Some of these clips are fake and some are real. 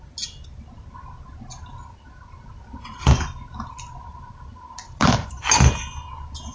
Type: real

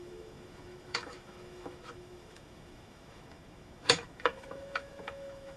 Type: fake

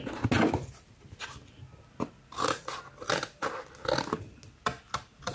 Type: real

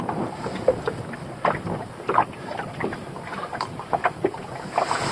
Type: real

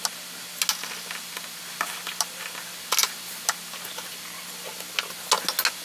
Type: real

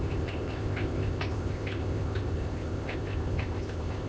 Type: fake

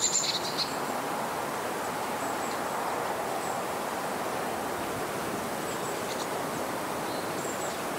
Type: real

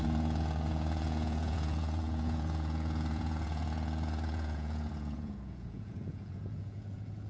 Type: fake